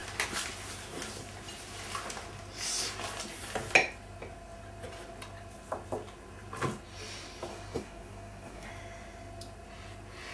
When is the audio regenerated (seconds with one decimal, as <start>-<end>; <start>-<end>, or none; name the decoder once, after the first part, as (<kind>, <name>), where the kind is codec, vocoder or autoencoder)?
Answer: 7.5-8.7 (codec, DAC)